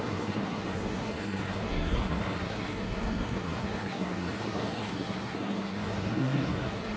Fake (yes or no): yes